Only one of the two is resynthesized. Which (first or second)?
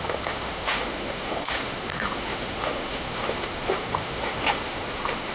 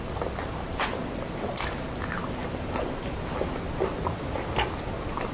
first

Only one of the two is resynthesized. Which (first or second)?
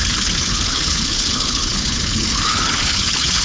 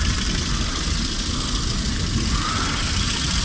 first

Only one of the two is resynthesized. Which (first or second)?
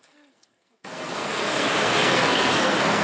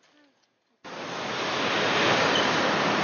first